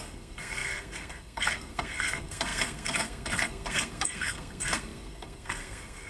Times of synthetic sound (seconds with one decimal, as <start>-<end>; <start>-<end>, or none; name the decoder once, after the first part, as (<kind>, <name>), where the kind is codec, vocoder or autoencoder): 0.0-6.1 (codec, SNAC)